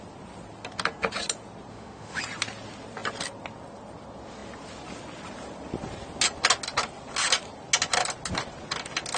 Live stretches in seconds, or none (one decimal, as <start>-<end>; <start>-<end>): 0.0-1.7; 2.2-9.2